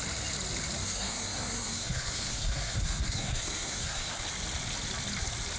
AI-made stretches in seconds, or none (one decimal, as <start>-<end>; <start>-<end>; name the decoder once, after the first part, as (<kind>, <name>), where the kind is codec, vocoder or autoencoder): 0.8-4.2 (codec, SNAC)